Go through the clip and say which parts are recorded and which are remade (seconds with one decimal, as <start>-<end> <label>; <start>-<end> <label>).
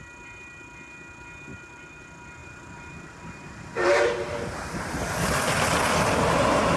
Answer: 0.0-1.5 recorded; 1.5-2.0 remade; 2.0-2.4 recorded; 2.4-4.0 remade; 4.0-6.8 recorded